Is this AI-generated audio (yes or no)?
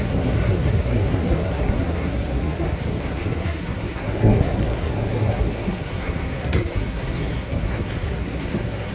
yes